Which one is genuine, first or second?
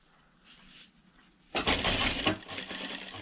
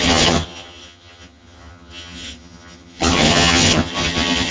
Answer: first